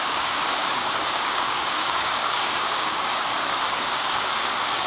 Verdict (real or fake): fake